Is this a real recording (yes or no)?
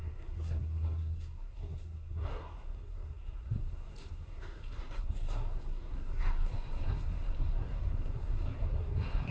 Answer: no